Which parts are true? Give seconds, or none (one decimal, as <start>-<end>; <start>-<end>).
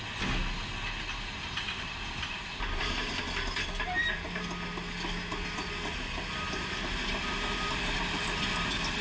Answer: 0.0-1.1; 3.2-9.0